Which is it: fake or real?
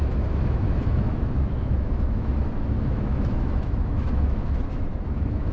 fake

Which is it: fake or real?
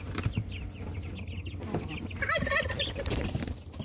real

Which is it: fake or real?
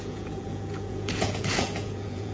fake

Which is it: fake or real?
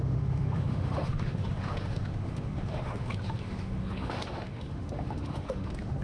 fake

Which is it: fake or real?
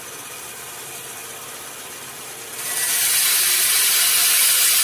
real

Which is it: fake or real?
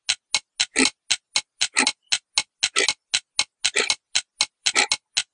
real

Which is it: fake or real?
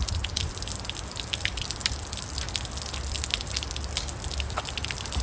real